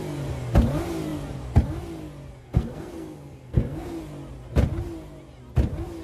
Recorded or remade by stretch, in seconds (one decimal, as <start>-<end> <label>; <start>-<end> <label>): 0.0-2.4 recorded; 2.4-4.0 remade; 4.0-6.0 recorded